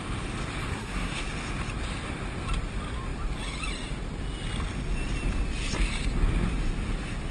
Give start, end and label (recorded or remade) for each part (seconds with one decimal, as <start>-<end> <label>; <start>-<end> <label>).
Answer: 0.0-0.7 recorded; 0.7-1.2 remade; 1.2-7.3 recorded